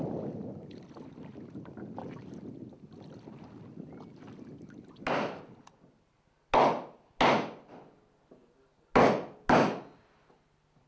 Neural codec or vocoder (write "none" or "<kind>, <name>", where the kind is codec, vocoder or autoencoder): none